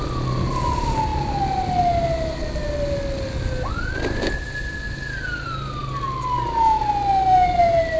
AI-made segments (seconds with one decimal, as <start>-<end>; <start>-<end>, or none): none